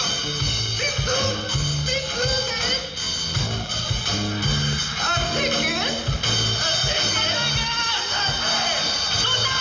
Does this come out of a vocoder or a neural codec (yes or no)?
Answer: no